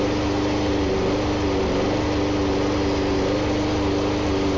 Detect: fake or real real